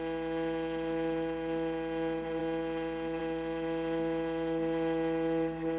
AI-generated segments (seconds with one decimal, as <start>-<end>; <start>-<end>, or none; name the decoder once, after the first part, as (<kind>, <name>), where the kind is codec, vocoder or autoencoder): none